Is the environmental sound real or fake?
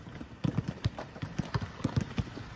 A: real